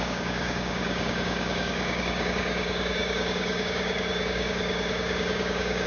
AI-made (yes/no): yes